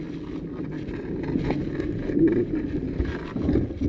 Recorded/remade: recorded